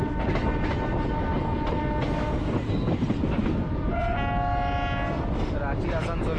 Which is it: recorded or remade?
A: recorded